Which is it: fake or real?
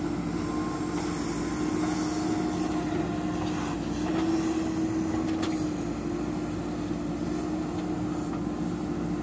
real